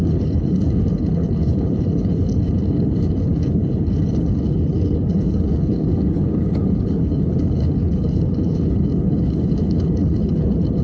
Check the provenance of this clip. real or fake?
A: fake